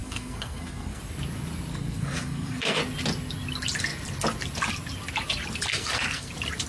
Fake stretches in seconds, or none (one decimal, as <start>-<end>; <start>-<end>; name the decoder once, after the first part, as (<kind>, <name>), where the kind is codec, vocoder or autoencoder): 0.0-1.0 (codec, SNAC); 1.7-2.8; 5.7-6.3